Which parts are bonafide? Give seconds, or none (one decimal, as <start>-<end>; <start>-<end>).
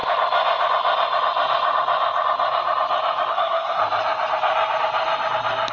0.0-3.3; 3.8-5.7